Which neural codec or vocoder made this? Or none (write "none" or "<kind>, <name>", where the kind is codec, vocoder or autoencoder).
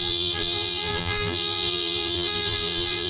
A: vocoder, BigVGAN v2